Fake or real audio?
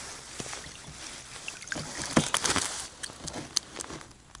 real